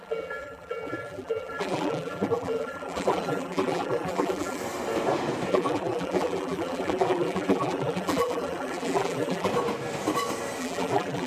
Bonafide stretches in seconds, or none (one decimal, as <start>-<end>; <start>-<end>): 4.6-5.5; 9.5-10.6